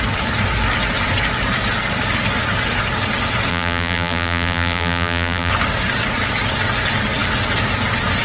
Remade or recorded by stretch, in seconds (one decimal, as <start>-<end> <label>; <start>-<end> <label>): 0.0-3.5 recorded; 3.5-5.5 remade; 5.5-8.2 recorded